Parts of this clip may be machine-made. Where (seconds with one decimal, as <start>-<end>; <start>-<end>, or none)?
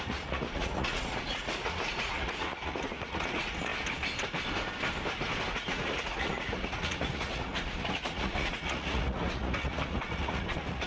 0.0-3.7; 5.5-10.9